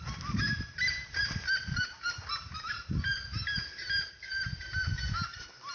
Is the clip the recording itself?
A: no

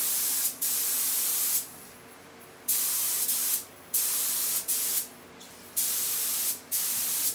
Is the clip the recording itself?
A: yes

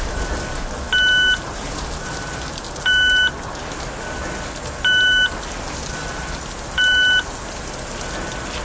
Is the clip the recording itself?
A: yes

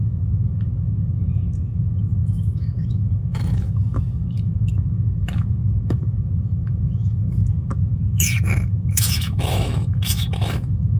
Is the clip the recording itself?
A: no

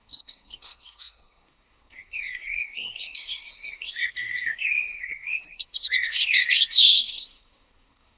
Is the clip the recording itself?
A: no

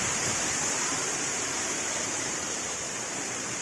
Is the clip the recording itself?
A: no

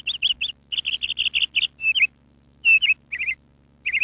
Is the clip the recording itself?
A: yes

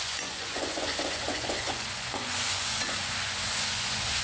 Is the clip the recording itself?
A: no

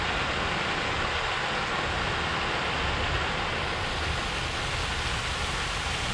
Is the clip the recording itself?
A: yes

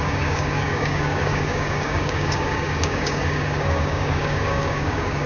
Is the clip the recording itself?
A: no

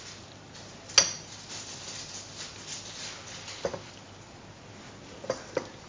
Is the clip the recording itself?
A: yes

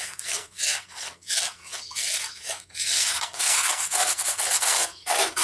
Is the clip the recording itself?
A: no